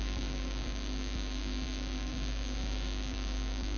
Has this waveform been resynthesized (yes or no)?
yes